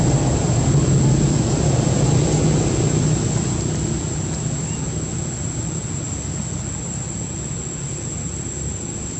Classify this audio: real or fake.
real